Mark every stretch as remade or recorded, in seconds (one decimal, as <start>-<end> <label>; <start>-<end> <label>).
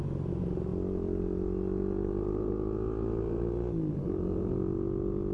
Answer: 0.0-5.3 recorded